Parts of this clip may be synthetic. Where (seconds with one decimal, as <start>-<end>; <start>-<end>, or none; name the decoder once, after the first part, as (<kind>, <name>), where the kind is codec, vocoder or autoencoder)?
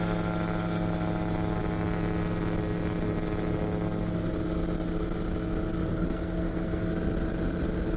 5.9-6.9 (codec, SNAC)